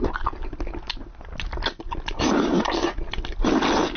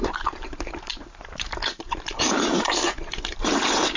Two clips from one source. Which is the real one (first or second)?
first